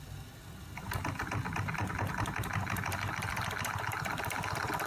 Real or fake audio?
real